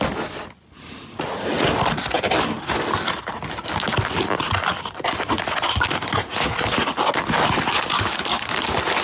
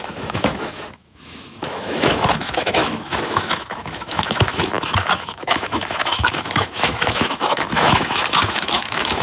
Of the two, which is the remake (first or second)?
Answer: second